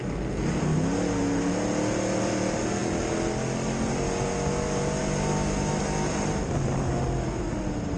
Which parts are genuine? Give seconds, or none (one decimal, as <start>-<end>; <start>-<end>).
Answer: 0.0-8.0